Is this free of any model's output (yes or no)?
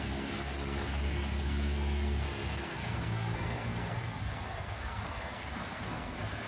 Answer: no